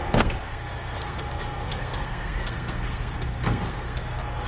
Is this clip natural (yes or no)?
no